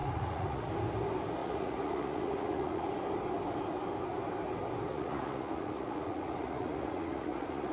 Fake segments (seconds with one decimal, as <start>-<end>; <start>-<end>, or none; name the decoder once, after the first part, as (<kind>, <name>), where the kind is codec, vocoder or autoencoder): 0.0-0.7 (vocoder, Vocos); 1.4-2.9; 4.9-7.7